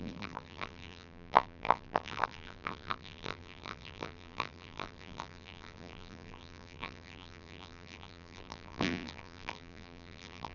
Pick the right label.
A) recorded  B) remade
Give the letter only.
B